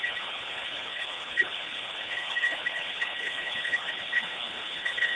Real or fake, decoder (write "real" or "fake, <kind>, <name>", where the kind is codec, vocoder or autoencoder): fake, codec, HILCodec